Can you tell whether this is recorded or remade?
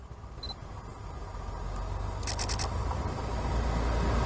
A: recorded